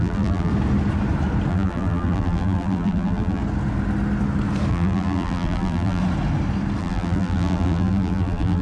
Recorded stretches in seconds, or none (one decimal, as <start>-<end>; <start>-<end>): 0.5-1.5; 3.4-4.7; 6.0-6.8